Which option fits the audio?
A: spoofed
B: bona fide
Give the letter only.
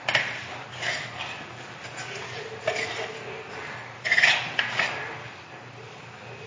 B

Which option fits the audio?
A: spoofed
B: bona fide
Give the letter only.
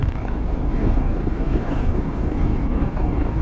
A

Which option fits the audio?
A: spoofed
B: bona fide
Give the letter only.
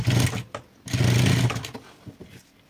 B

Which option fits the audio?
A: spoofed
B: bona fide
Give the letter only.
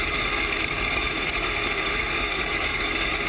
A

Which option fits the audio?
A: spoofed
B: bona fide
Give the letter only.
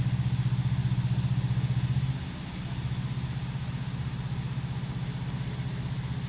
B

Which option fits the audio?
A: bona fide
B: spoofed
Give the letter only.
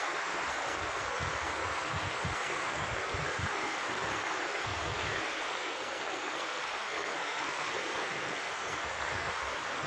B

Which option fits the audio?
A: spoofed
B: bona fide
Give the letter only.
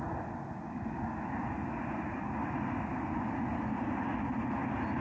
B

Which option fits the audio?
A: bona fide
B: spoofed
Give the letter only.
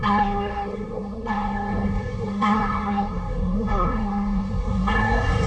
B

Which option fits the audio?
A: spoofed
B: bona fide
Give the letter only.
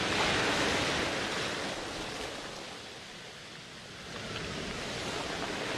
B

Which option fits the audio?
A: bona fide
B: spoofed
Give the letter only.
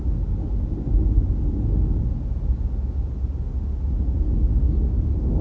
A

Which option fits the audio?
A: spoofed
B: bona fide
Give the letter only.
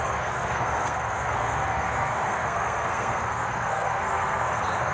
A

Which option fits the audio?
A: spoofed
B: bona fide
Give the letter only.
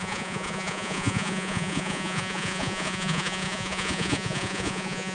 A